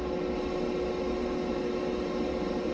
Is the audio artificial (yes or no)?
no